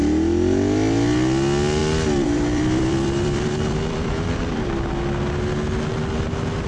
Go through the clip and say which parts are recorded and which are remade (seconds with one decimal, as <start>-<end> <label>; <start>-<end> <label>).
0.0-1.8 recorded; 1.8-4.9 remade; 4.9-6.7 recorded